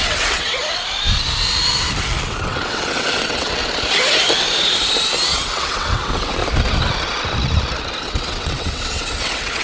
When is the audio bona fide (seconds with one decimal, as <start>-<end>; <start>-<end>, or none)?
0.6-2.3; 3.6-5.3; 6.4-8.0